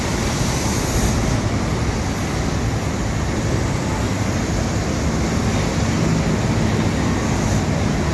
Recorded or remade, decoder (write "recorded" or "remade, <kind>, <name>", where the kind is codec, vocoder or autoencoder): recorded